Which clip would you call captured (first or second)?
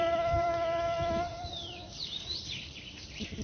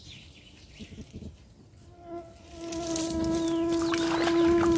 second